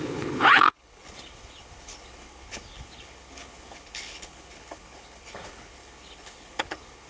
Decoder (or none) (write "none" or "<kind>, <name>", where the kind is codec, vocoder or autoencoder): codec, HILCodec